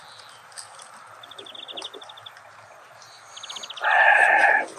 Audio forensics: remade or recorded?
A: recorded